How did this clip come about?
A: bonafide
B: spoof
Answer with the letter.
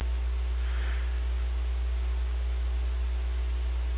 A